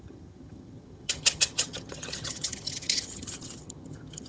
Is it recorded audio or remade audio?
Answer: remade